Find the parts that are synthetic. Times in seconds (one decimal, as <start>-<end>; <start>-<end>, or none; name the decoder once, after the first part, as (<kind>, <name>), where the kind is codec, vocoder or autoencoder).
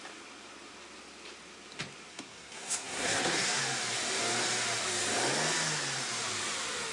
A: 2.1-3.6 (codec, SNAC)